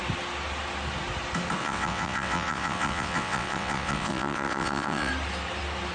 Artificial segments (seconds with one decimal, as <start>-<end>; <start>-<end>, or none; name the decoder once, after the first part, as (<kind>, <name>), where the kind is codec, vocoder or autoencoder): 1.6-5.1 (vocoder, WaveNeXt)